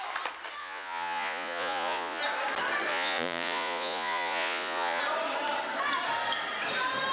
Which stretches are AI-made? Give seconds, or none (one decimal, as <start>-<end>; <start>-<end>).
0.6-2.2; 2.9-5.0